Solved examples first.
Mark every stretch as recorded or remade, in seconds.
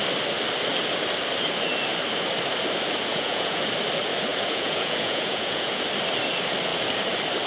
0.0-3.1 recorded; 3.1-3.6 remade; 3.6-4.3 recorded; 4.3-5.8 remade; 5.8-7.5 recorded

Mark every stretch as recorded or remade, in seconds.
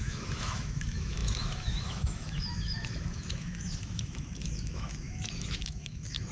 0.0-6.3 remade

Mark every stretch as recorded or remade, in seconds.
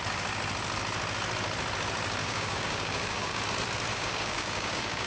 0.0-2.2 recorded; 2.2-3.4 remade; 3.4-3.9 recorded; 3.9-5.1 remade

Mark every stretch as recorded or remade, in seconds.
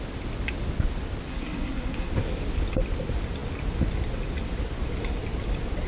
0.0-1.3 recorded; 1.3-2.1 remade; 2.1-5.9 recorded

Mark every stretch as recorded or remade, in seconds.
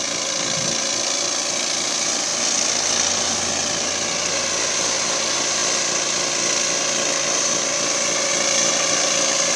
0.0-9.6 recorded